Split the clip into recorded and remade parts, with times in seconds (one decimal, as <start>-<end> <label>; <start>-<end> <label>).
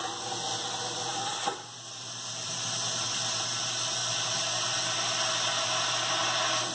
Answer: 0.0-1.1 recorded; 1.1-3.4 remade; 3.4-4.0 recorded; 4.0-6.0 remade; 6.0-6.7 recorded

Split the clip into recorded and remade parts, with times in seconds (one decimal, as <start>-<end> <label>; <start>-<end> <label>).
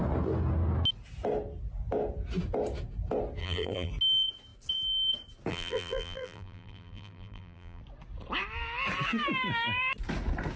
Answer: 0.0-3.4 recorded; 3.4-3.9 remade; 3.9-5.5 recorded; 5.5-7.8 remade; 7.8-10.6 recorded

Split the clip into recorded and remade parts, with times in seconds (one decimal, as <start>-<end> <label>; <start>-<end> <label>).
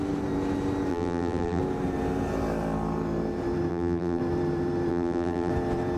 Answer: 0.0-0.9 recorded; 0.9-1.6 remade; 1.6-3.7 recorded; 3.7-4.2 remade; 4.2-4.9 recorded; 4.9-5.5 remade; 5.5-6.0 recorded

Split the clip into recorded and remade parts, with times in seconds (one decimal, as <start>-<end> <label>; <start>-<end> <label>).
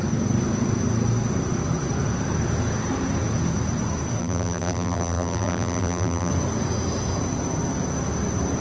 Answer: 0.0-4.2 recorded; 4.2-6.3 remade; 6.3-8.6 recorded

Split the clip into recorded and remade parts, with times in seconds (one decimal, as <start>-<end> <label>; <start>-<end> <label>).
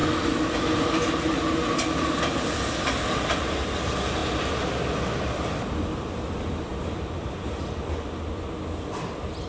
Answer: 0.0-6.7 recorded; 6.7-7.5 remade; 7.5-9.5 recorded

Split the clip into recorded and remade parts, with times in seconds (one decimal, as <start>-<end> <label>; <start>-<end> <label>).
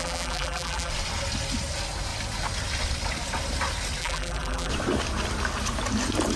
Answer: 0.0-0.9 remade; 0.9-4.0 recorded; 4.0-4.7 remade; 4.7-6.4 recorded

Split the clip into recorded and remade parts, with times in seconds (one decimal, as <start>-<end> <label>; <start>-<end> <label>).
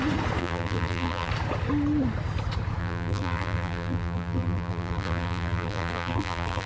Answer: 0.0-0.4 recorded; 0.4-1.3 remade; 1.3-2.8 recorded; 2.8-6.7 remade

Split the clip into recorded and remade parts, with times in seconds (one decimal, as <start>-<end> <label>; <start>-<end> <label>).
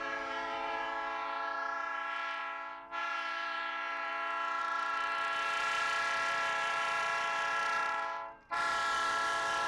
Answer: 0.0-2.4 remade; 2.4-3.0 recorded; 3.0-4.1 remade; 4.1-4.6 recorded; 4.6-9.7 remade